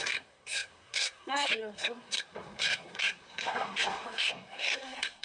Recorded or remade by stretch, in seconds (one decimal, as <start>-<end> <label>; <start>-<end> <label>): 0.0-5.2 remade